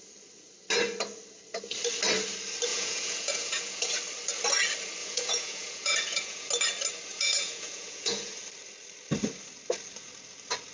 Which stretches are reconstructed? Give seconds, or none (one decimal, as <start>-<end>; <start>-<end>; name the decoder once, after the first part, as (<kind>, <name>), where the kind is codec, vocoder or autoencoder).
2.7-3.9 (vocoder, Vocos); 5.0-6.5; 7.1-8.3